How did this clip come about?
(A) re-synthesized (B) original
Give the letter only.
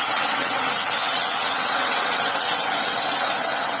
A